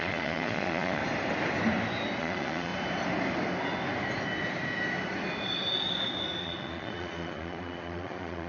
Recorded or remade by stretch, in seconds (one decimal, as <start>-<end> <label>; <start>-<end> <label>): 0.0-1.0 remade; 1.0-2.2 recorded; 2.2-2.7 remade; 2.7-6.4 recorded; 6.4-8.5 remade